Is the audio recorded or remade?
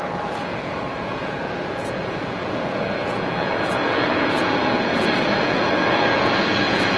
remade